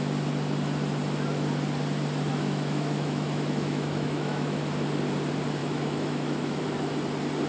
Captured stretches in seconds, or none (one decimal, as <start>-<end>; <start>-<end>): 0.0-2.3; 4.6-5.6; 6.6-7.5